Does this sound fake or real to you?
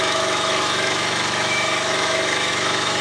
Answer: fake